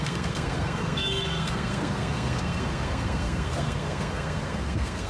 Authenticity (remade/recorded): remade